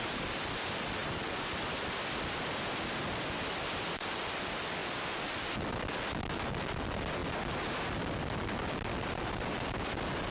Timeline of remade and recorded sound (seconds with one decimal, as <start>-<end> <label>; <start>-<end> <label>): 0.0-10.3 recorded